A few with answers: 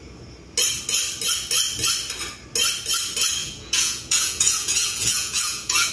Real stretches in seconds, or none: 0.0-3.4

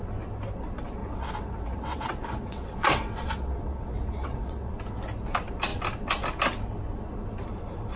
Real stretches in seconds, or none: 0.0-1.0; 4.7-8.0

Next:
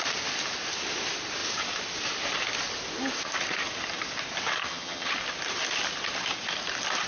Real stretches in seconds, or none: 0.0-4.6; 5.1-7.1

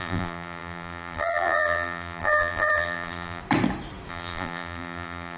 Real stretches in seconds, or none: 3.4-4.1